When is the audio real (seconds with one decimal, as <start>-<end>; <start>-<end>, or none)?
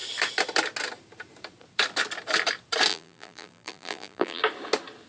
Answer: 0.0-2.9; 4.4-5.1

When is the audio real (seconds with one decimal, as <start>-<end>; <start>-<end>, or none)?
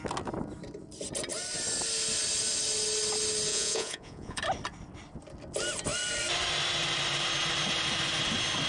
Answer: 0.0-3.5; 4.4-8.7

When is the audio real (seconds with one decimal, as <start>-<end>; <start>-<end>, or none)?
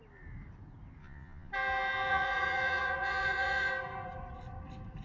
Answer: 0.0-1.0; 1.5-2.1; 3.7-5.0